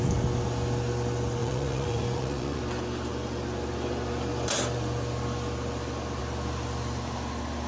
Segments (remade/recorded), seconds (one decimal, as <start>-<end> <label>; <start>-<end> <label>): 0.0-1.4 recorded; 1.4-2.6 remade; 2.6-7.7 recorded